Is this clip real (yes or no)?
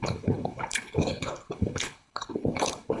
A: no